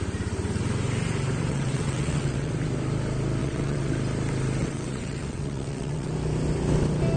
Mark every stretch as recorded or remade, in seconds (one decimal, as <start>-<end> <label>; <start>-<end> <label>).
0.0-1.5 recorded; 1.5-2.5 remade; 2.5-3.4 recorded; 3.4-3.9 remade; 3.9-4.6 recorded; 4.6-6.1 remade; 6.1-7.2 recorded